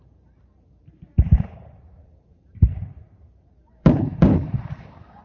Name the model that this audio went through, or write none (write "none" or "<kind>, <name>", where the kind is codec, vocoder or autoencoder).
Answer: vocoder, BigVGAN v2